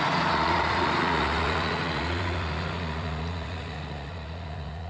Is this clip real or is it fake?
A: fake